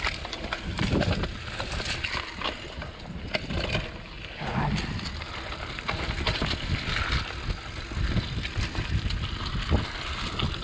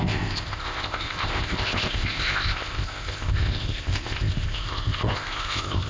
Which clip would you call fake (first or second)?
second